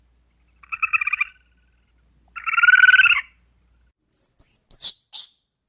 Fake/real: real